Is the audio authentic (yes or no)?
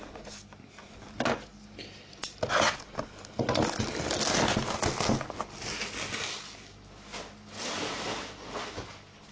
yes